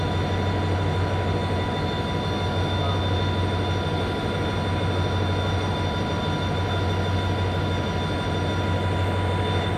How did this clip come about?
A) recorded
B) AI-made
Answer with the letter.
A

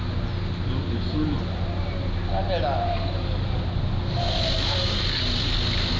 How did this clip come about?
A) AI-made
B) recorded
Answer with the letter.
B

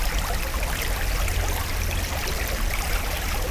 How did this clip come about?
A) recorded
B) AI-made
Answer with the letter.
A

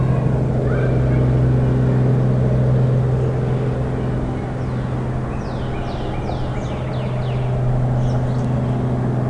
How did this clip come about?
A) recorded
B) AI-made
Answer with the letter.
A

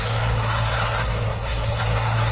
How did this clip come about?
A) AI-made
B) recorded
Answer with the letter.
A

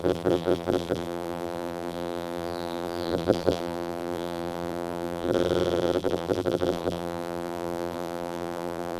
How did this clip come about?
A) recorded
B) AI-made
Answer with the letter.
B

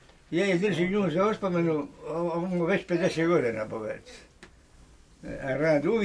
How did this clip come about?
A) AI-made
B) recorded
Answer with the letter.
B